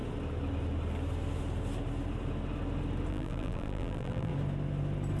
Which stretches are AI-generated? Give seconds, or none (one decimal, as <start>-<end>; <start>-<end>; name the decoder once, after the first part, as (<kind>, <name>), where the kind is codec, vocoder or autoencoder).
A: 3.1-4.3 (vocoder, BigVGAN v2)